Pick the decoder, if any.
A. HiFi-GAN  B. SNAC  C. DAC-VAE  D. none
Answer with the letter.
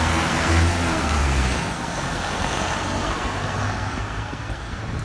B